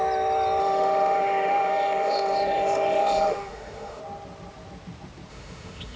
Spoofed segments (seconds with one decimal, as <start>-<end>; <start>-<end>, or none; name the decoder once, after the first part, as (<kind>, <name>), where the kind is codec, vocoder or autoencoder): 0.6-4.0 (autoencoder, DAC-VAE); 5.3-6.0